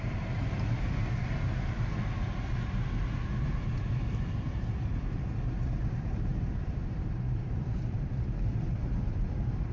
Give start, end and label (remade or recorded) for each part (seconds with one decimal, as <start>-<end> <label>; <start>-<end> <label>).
0.0-1.0 remade; 1.0-5.6 recorded; 5.6-6.3 remade; 6.3-7.1 recorded; 7.1-9.7 remade